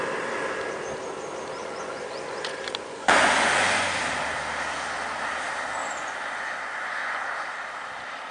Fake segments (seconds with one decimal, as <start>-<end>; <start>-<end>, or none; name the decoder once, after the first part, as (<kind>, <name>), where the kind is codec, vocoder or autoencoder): 1.6-4.0 (vocoder, Vocos); 5.8-7.2